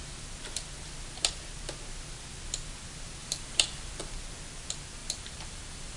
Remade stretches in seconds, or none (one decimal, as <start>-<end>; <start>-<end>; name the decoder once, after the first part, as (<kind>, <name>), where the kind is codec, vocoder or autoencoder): 3.2-4.0 (vocoder, BigVGAN v2); 5.0-6.0